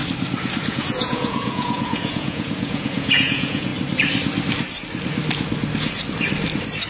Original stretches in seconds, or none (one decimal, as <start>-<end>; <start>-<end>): 0.0-0.7; 3.7-6.9